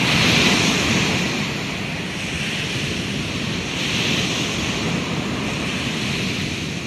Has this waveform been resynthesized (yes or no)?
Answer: no